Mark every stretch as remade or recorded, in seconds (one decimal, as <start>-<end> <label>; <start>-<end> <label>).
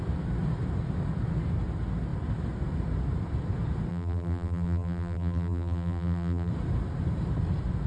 0.0-3.9 recorded; 3.9-6.5 remade; 6.5-7.9 recorded